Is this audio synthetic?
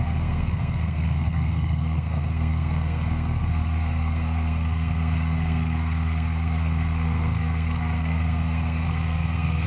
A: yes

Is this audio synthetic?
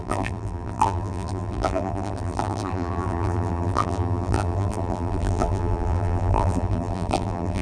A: yes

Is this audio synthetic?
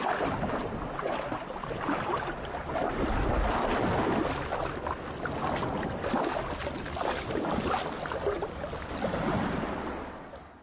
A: no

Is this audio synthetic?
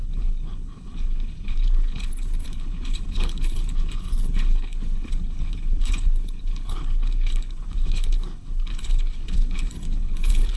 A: yes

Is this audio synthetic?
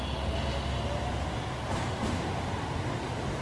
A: no